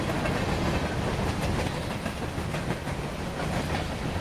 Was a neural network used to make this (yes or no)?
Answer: no